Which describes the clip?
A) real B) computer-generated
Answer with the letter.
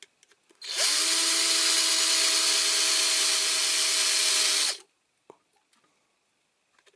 A